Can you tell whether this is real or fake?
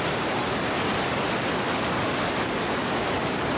real